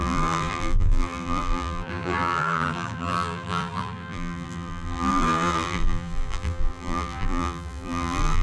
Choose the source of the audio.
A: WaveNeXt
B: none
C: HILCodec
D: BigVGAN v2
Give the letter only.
D